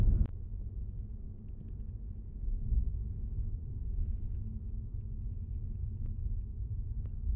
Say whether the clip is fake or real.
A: fake